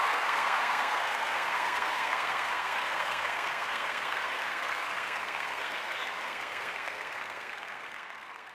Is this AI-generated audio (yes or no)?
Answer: yes